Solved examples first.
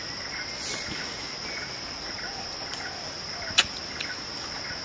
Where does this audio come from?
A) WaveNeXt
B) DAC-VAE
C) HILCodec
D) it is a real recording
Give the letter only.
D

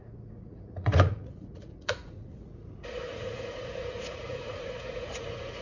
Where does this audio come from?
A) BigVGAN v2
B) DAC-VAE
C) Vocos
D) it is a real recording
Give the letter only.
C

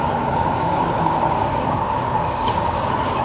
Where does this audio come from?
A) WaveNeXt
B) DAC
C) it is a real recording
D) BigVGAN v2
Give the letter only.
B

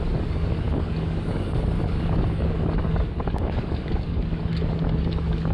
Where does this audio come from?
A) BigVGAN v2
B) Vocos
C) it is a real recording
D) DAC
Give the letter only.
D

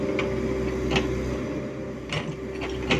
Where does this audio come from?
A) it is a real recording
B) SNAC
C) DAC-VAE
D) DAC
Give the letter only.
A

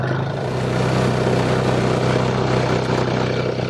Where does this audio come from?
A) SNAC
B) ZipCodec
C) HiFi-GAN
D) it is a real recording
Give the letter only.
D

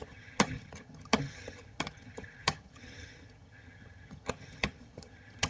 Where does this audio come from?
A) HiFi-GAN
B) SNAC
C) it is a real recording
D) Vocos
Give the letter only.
A